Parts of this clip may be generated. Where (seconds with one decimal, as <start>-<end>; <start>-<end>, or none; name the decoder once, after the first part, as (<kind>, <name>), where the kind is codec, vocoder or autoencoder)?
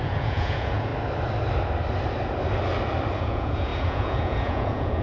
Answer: 0.0-0.9 (vocoder, Vocos); 3.2-5.0